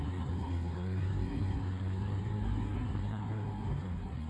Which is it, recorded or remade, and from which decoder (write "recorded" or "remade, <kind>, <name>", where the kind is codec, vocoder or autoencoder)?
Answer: remade, codec, SNAC